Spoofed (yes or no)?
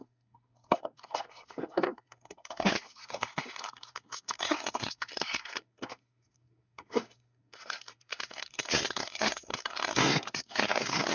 yes